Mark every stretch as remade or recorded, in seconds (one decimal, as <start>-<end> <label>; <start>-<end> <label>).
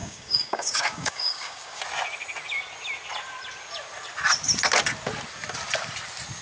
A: 0.0-1.8 remade; 1.8-6.4 recorded